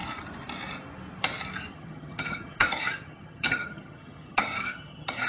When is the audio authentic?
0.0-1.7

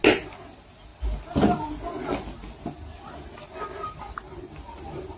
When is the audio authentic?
0.0-5.2

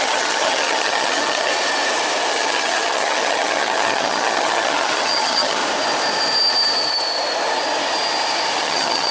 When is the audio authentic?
1.5-2.3; 5.6-8.6

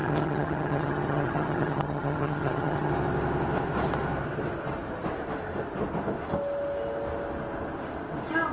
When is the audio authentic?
2.9-8.5

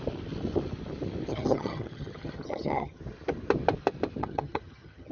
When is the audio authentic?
0.0-1.3; 3.0-4.2

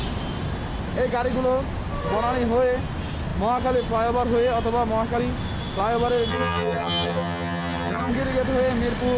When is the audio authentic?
0.0-6.3; 8.1-9.2

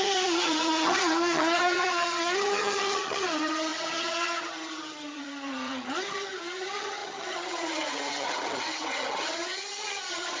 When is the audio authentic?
none